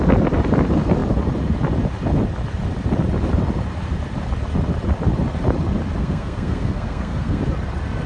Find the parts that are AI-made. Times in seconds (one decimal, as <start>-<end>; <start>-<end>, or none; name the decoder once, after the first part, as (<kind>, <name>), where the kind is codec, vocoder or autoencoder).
6.0-7.4 (codec, SNAC)